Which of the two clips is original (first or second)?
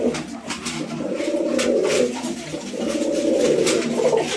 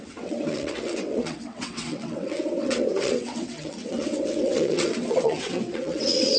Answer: first